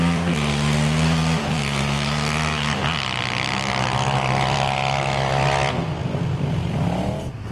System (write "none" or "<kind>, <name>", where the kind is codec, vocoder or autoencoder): none